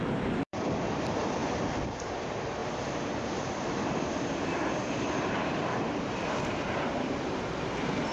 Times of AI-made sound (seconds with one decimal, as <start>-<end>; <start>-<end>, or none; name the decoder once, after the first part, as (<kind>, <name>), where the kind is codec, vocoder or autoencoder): 0.0-1.4 (vocoder, BigVGAN v2); 2.2-8.1